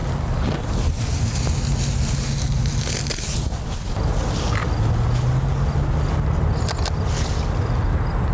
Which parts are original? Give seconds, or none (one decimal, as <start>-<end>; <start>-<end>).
0.0-8.3